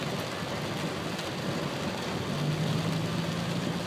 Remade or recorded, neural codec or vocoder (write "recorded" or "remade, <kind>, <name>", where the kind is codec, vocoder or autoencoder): recorded